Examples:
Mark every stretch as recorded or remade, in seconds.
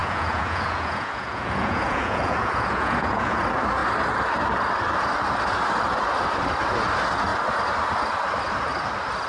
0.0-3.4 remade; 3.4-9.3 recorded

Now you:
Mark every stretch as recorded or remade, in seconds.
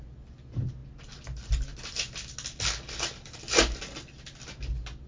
0.0-5.1 recorded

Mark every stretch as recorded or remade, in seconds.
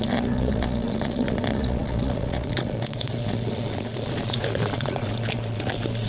0.0-6.1 remade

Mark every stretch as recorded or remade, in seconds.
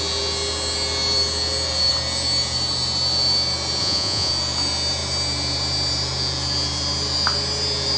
0.0-3.8 recorded; 3.8-4.3 remade; 4.3-8.0 recorded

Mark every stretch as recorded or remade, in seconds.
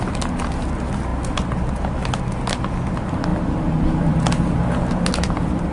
0.0-5.7 recorded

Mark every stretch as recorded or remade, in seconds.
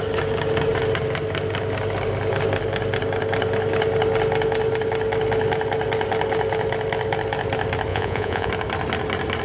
0.0-7.9 recorded; 7.9-8.5 remade; 8.5-9.4 recorded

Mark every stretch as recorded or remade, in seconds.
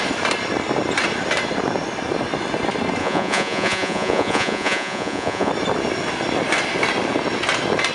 0.0-3.0 recorded; 3.0-5.5 remade; 5.5-7.9 recorded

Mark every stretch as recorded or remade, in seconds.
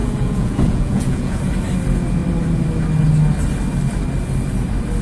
0.0-1.4 remade; 1.4-5.0 recorded